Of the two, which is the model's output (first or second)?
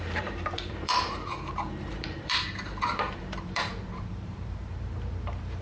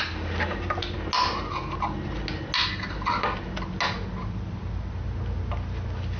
first